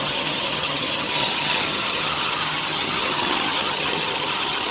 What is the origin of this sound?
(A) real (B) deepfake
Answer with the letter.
B